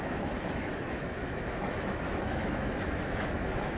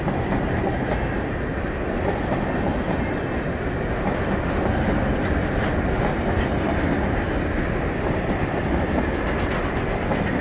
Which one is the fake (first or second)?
first